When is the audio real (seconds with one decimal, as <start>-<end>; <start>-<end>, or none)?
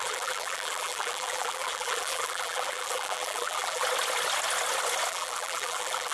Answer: 3.8-5.1